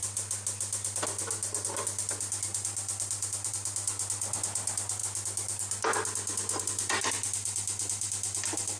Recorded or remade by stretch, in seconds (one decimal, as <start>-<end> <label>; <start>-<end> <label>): 0.0-8.8 recorded